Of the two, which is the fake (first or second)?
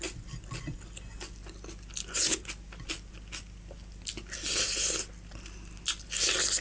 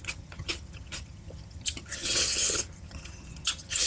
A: second